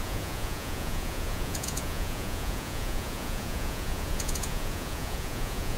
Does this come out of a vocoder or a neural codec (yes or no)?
yes